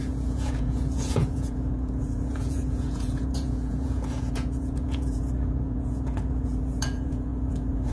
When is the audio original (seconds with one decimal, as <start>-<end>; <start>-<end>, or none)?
none